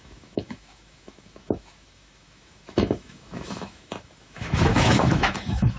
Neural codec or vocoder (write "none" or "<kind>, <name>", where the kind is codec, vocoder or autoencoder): autoencoder, DAC-VAE